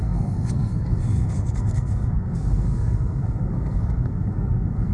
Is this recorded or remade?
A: remade